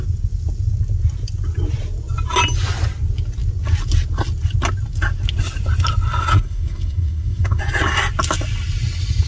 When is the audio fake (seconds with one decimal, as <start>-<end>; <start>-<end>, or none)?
6.3-7.6